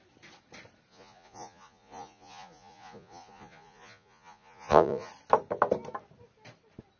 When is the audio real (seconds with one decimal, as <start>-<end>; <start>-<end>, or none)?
0.0-0.9; 5.1-7.0